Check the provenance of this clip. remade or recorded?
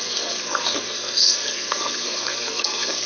remade